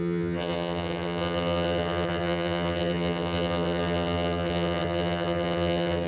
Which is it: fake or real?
fake